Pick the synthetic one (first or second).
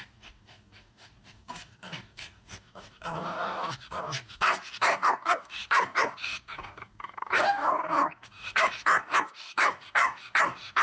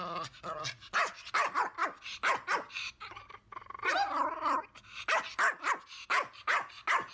first